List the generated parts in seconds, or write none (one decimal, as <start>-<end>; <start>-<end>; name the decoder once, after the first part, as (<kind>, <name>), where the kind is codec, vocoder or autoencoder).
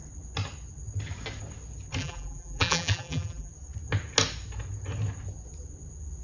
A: 2.0-3.5 (vocoder, BigVGAN v2)